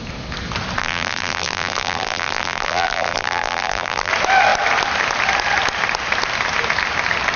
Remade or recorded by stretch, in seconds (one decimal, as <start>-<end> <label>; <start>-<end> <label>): 0.0-0.8 recorded; 0.8-4.1 remade; 4.1-7.4 recorded